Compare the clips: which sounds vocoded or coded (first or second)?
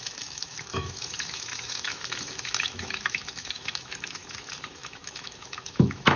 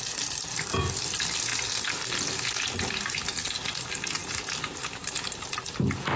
first